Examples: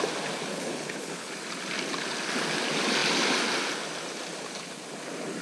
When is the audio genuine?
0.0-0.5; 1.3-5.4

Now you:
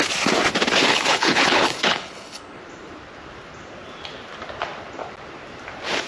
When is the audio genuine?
0.0-0.9; 2.6-6.1

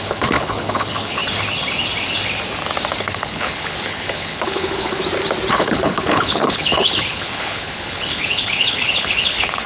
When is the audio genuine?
1.2-3.0; 5.0-5.5

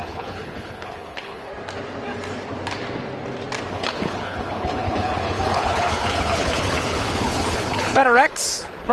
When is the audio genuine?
1.5-3.7